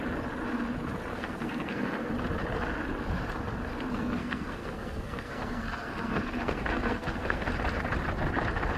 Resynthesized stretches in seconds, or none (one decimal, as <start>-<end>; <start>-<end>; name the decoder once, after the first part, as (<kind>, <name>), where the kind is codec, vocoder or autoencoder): 1.1-2.1 (codec, SNAC); 3.9-7.5